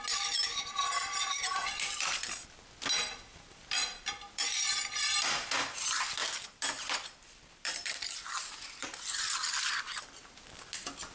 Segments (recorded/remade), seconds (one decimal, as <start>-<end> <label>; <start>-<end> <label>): 0.0-3.3 recorded; 3.3-4.5 remade; 4.5-6.2 recorded; 6.2-9.2 remade; 9.2-11.1 recorded